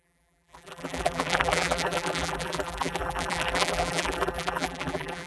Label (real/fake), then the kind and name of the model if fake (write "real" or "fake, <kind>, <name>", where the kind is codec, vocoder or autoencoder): fake, vocoder, BigVGAN v2